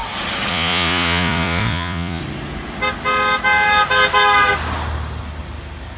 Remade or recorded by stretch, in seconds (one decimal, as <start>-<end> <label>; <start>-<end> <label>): 0.0-0.5 recorded; 0.5-2.2 remade; 2.2-6.0 recorded